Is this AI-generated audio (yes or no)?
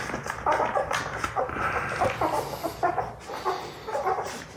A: no